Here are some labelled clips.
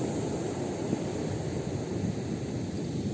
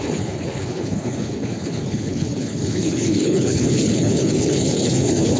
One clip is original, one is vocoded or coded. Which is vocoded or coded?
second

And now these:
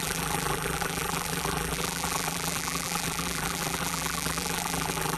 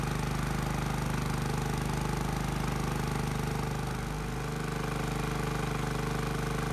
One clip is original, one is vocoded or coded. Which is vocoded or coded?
first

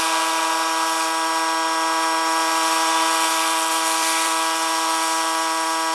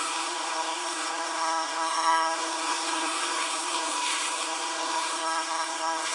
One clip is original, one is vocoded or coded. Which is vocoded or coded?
second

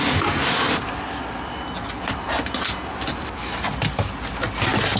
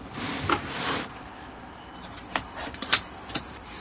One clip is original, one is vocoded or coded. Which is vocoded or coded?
second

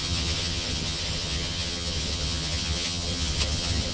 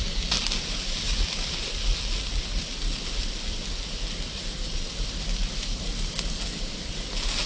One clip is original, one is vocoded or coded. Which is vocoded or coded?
first